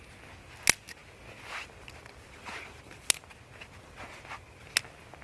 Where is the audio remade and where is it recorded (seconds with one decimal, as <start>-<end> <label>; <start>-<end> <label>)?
0.0-5.2 recorded